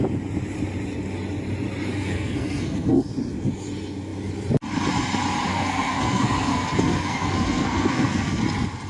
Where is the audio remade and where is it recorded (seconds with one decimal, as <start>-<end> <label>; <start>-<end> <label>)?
0.0-1.9 recorded; 1.9-3.1 remade; 3.1-5.5 recorded; 5.5-8.4 remade; 8.4-8.9 recorded